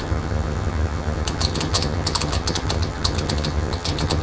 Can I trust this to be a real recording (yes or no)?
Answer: no